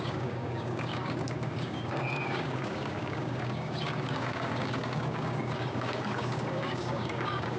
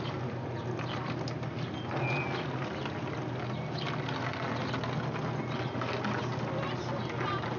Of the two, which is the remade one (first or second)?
first